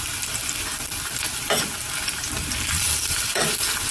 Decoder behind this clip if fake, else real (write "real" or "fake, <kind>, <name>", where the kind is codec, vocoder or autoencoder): real